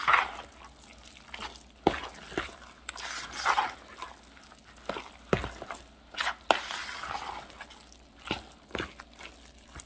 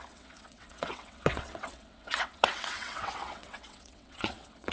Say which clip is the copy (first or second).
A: second